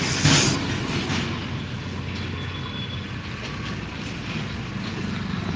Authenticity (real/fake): real